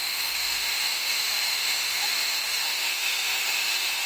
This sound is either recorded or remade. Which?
remade